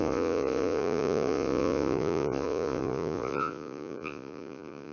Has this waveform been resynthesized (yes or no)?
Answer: yes